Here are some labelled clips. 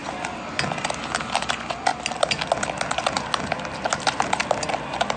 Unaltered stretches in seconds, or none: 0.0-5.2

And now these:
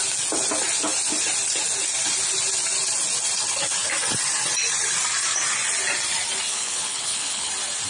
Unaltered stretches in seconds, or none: 0.0-6.5; 7.5-7.9

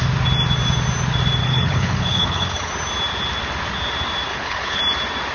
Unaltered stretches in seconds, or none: 0.0-1.4; 2.7-4.3; 4.8-5.3

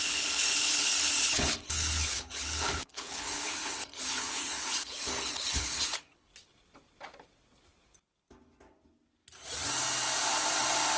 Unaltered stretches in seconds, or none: 6.3-11.0

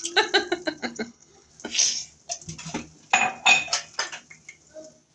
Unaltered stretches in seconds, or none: 0.0-0.8; 1.5-5.1

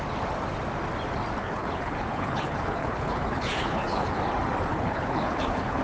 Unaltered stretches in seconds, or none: 0.0-1.4; 4.2-4.7

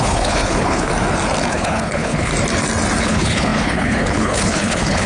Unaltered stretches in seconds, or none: 0.9-1.5; 2.3-3.0

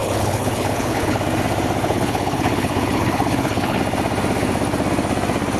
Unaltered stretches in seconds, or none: 1.2-1.8; 3.8-5.6